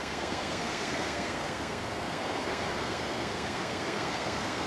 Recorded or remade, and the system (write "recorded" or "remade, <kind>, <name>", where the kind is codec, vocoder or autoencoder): remade, codec, SNAC